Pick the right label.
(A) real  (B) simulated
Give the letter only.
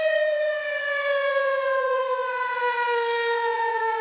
B